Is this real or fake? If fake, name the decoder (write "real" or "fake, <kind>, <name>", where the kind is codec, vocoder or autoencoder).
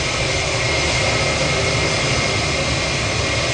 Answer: real